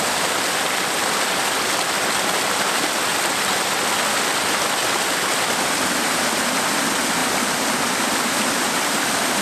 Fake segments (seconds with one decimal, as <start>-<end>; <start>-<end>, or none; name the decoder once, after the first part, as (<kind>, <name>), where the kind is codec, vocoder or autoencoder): 7.2-9.4 (vocoder, BigVGAN v2)